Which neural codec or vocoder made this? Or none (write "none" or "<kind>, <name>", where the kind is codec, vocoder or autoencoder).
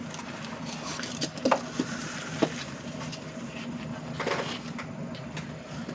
none